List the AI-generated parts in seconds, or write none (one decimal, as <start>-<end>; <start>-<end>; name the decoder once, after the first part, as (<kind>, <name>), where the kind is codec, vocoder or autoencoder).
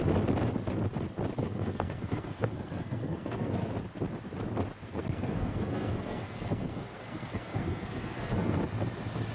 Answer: 1.4-3.7 (codec, SNAC); 4.8-8.6